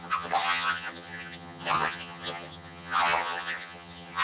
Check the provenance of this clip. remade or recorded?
remade